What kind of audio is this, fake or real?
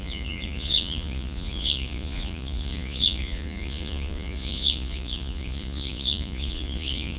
fake